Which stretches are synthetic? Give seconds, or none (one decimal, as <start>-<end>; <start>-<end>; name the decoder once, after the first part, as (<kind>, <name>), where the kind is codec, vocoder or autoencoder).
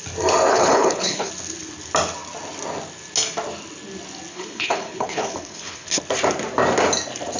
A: 0.5-1.3 (codec, HILCodec); 4.3-6.0